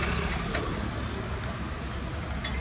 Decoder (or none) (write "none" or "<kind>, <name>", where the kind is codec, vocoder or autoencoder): none